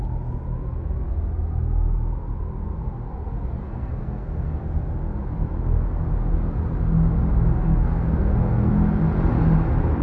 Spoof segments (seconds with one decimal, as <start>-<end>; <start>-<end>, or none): 3.6-4.6; 7.6-8.7